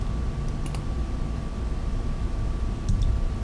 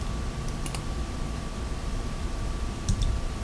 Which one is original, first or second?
first